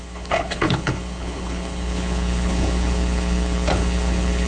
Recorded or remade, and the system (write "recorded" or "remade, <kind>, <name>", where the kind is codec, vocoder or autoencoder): remade, codec, HILCodec